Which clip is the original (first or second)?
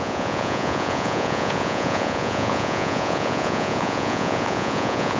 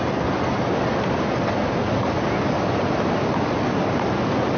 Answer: second